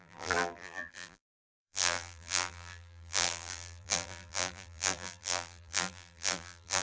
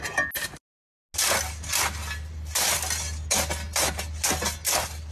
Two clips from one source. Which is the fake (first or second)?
first